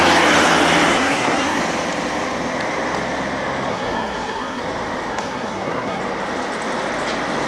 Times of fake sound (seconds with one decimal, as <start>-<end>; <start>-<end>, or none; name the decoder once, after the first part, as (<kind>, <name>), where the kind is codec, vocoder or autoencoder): 0.9-1.6 (codec, SNAC); 3.7-4.6; 5.1-6.0